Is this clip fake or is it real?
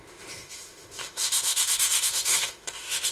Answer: fake